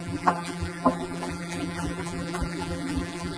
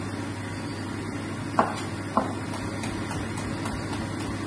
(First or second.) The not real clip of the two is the first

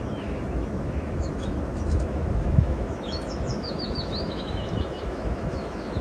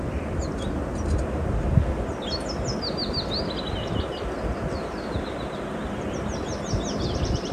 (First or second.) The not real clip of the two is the first